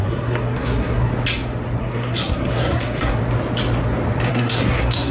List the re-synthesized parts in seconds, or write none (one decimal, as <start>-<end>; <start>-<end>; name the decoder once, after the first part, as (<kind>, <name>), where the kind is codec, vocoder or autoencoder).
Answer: 0.0-1.1 (codec, SNAC); 1.8-3.2; 4.3-5.1